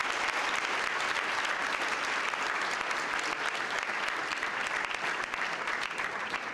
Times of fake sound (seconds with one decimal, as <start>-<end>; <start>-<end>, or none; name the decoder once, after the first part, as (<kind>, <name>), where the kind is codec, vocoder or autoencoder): none